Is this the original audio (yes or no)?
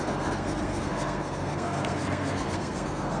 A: no